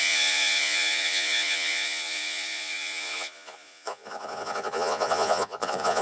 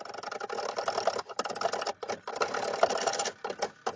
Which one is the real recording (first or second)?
second